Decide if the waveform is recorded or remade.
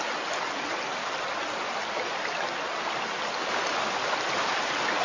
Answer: recorded